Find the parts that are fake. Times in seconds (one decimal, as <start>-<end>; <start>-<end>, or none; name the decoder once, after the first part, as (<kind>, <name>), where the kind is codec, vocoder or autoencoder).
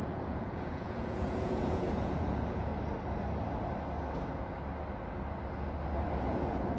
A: 0.0-2.7 (vocoder, Vocos); 6.2-6.8